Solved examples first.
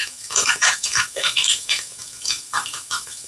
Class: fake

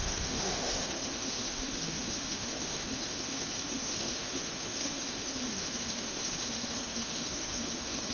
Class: fake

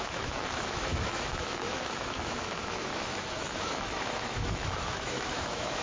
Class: fake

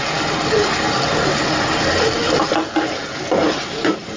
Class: real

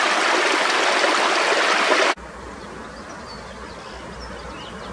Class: real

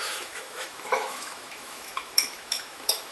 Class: fake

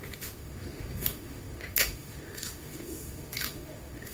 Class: fake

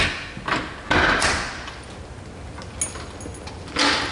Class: real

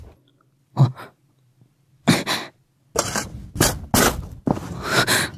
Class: real